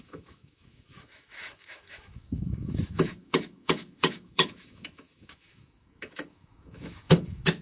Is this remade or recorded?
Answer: remade